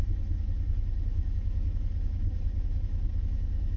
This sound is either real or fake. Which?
fake